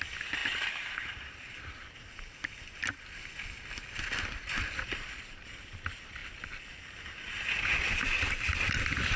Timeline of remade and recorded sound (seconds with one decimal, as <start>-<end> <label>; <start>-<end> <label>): 0.0-0.4 recorded; 0.4-1.6 remade; 1.6-9.2 recorded